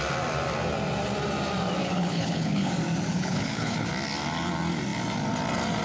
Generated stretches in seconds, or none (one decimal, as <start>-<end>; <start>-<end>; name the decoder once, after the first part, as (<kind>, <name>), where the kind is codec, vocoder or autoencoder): 1.8-2.7 (codec, HILCodec); 3.1-3.9